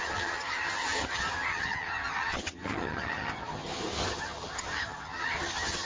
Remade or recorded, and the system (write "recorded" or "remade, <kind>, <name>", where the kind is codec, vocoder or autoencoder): remade, vocoder, HiFi-GAN